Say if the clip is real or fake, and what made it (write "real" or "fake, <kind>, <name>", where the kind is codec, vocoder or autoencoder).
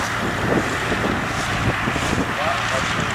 real